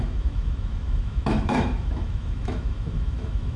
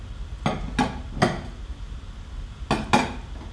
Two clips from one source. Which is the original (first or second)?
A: second